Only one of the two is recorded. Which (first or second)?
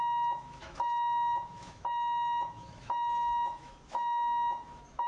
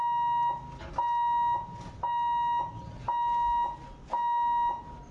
second